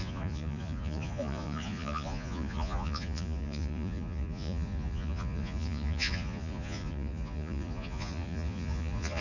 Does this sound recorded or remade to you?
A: remade